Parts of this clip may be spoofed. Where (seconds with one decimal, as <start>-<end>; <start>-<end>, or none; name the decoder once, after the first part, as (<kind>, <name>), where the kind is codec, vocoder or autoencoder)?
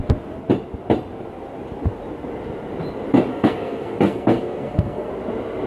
3.3-5.1 (codec, SNAC)